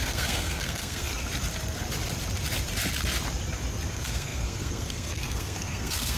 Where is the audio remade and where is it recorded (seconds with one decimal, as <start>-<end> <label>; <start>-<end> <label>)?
0.0-1.1 remade; 1.1-3.9 recorded; 3.9-6.2 remade